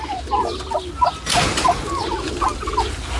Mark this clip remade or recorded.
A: recorded